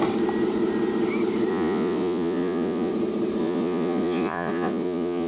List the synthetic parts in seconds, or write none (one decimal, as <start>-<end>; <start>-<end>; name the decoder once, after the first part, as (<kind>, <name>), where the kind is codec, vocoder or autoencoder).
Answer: 1.5-2.9 (vocoder, Vocos); 3.4-5.3